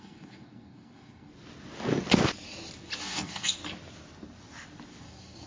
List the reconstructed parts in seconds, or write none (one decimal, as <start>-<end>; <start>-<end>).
0.0-1.3; 3.0-3.6; 5.0-5.5